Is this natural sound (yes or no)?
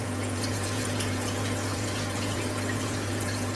no